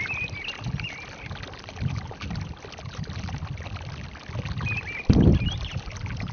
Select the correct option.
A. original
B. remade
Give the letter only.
A